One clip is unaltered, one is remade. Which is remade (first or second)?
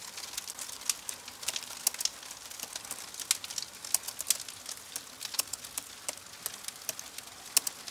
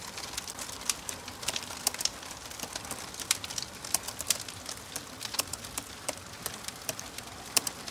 second